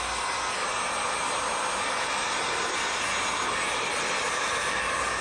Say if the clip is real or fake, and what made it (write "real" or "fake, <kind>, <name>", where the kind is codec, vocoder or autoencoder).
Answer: real